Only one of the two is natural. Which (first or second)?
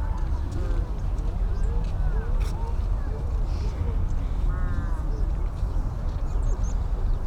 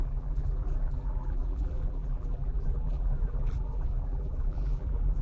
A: first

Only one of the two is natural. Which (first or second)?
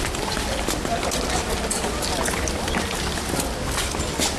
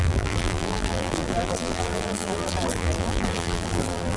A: first